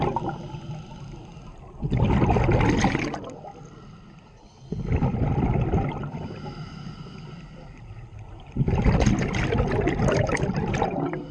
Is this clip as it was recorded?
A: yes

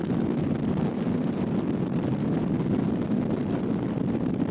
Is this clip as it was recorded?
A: no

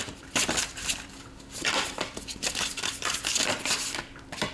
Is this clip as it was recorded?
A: no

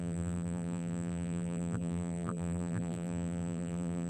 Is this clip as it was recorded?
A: no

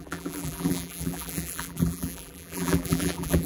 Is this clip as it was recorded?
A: no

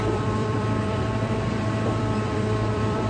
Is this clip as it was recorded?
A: no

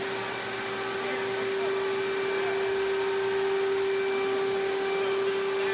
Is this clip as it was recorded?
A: yes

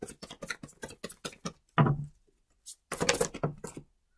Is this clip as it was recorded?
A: yes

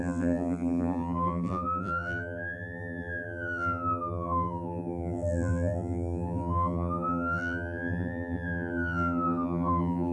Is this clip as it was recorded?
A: no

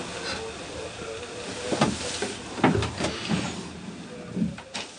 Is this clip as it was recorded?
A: yes